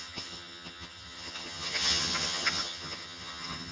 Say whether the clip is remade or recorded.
remade